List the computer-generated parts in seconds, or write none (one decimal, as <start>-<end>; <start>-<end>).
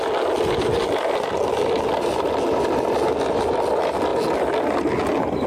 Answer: none